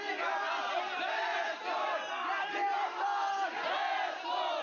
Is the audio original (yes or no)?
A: yes